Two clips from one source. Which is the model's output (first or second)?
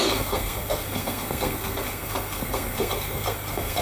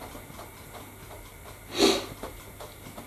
first